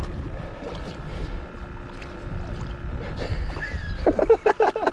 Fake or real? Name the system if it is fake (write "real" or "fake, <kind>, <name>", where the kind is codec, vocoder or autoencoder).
real